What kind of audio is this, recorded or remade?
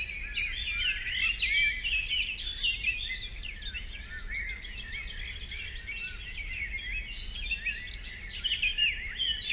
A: recorded